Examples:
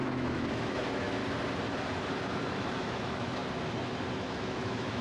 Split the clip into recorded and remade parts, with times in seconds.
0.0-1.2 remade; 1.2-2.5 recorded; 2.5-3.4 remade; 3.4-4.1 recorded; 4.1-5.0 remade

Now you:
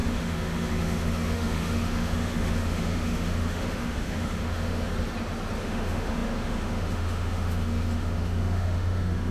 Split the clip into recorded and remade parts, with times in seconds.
0.0-4.9 remade; 4.9-5.6 recorded; 5.6-9.3 remade

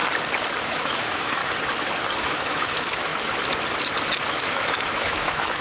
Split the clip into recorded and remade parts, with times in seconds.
0.0-0.7 recorded; 0.7-1.4 remade; 1.4-2.2 recorded; 2.2-3.1 remade; 3.1-4.3 recorded; 4.3-5.6 remade

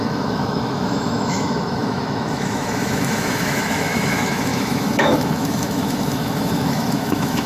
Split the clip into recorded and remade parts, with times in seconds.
0.0-7.5 remade

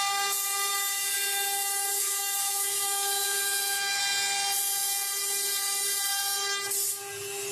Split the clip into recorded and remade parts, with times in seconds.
0.0-0.7 recorded; 0.7-4.0 remade; 4.0-7.5 recorded

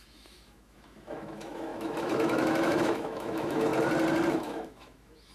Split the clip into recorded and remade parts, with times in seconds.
0.0-3.7 remade; 3.7-4.3 recorded; 4.3-5.3 remade

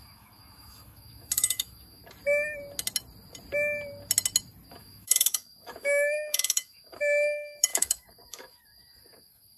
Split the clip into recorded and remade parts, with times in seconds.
0.0-2.0 remade; 2.0-4.7 recorded; 4.7-9.6 remade

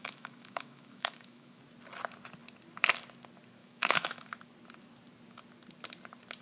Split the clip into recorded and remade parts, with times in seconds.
0.0-1.6 remade; 1.6-3.6 recorded; 3.6-4.3 remade; 4.3-6.4 recorded